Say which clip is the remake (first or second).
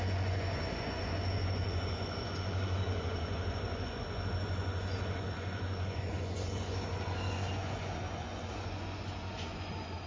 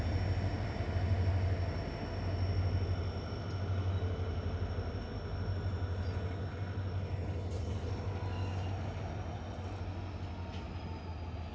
first